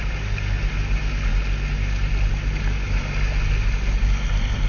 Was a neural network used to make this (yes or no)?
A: no